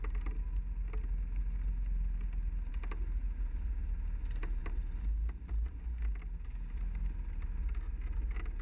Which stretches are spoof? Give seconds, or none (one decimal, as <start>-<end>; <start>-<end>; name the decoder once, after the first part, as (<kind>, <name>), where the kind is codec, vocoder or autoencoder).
none